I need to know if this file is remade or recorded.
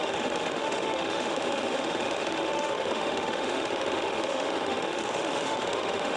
remade